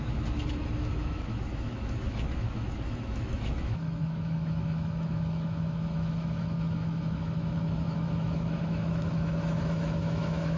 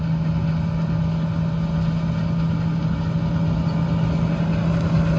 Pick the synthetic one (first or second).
first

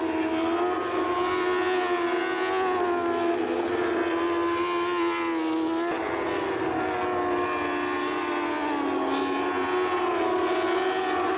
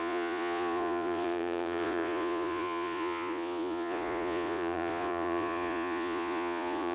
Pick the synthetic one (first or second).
second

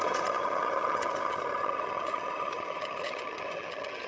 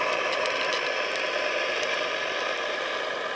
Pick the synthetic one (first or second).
first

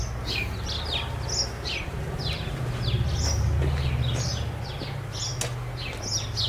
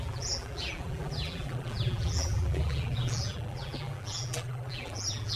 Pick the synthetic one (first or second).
second